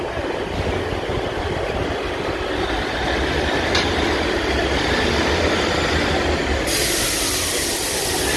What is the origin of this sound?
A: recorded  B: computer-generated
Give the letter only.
A